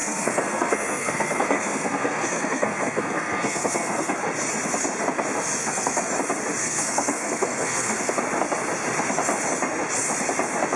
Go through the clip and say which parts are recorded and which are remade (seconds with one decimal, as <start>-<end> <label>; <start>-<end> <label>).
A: 0.0-4.2 remade; 4.2-5.6 recorded; 5.6-6.1 remade; 6.1-6.6 recorded; 6.6-8.1 remade; 8.1-10.8 recorded